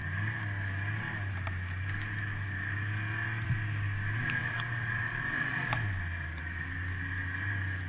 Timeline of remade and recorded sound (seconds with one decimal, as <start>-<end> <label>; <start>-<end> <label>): 0.0-5.1 recorded; 5.1-6.4 remade; 6.4-7.9 recorded